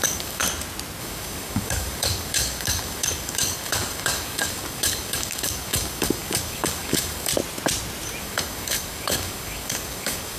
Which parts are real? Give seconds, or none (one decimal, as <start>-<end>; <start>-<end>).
0.4-1.0; 7.3-8.2